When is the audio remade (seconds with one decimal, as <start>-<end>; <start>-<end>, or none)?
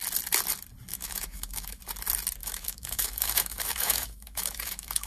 0.9-1.8; 2.4-5.1